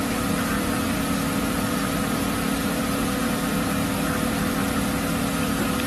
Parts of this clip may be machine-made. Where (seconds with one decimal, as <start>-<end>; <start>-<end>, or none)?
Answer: none